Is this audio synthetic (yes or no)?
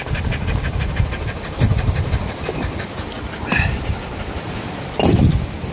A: no